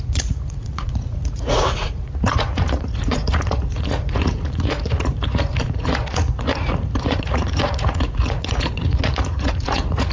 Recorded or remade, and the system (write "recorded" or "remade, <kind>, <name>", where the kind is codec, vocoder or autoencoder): remade, vocoder, Vocos